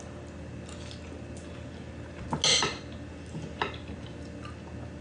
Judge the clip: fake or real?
real